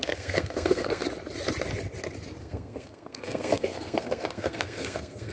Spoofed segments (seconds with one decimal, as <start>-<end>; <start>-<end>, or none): 0.0-1.0; 2.4-5.3

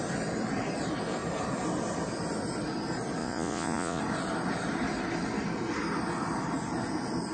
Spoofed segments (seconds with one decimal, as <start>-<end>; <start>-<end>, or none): 3.2-4.0

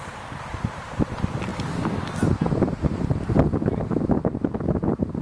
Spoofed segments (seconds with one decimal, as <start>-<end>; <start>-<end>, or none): none

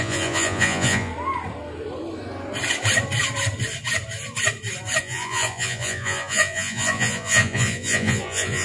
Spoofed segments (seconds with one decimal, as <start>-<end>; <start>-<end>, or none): 0.0-1.1; 5.0-8.6

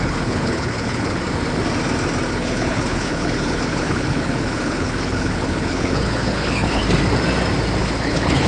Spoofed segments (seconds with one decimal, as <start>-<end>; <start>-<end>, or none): 0.0-1.2; 2.3-6.8; 7.8-8.5

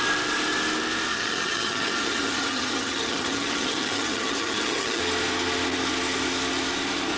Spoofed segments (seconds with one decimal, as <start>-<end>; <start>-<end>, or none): 1.1-5.0